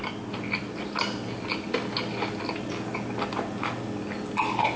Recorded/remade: recorded